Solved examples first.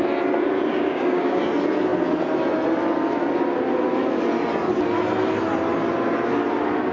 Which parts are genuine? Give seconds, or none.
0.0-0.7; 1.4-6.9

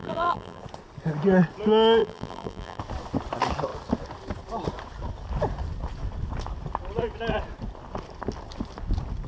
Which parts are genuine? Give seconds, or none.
0.6-2.0; 2.8-9.3

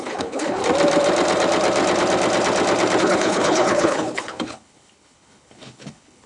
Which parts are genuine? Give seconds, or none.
0.6-3.0

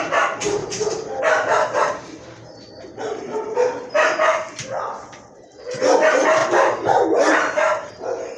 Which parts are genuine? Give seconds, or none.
0.0-0.6; 5.6-6.4; 7.9-8.4

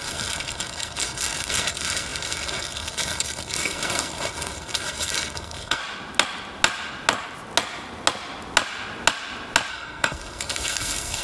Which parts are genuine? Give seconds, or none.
5.8-9.7

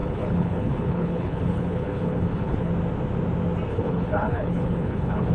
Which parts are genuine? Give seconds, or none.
2.7-3.7

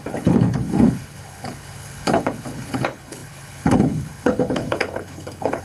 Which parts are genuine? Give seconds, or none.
none

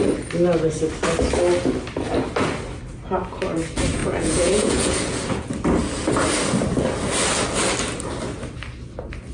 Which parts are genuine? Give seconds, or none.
0.0-4.0; 5.5-9.3